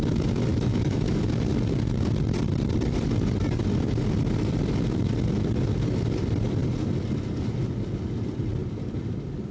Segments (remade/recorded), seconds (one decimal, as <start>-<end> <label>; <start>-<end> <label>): 0.0-0.5 recorded; 0.5-1.1 remade; 1.1-9.5 recorded